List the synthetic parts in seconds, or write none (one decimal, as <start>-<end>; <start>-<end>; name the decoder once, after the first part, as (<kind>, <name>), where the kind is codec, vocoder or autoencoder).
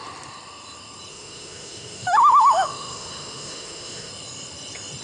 1.1-4.1 (autoencoder, DAC-VAE)